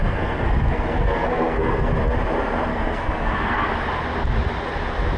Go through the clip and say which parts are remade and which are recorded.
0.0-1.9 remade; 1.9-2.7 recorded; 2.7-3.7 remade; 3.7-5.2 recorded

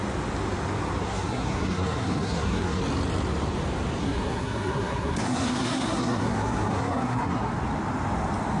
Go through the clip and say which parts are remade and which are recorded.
0.0-1.0 recorded; 1.0-2.8 remade; 2.8-4.0 recorded; 4.0-7.5 remade; 7.5-8.6 recorded

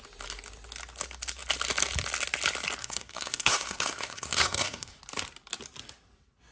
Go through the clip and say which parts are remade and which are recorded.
0.0-2.8 recorded; 2.8-5.0 remade; 5.0-6.5 recorded